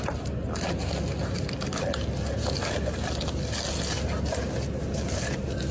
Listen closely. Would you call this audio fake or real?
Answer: real